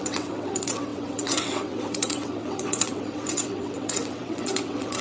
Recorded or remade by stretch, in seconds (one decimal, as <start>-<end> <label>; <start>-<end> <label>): 0.0-5.0 remade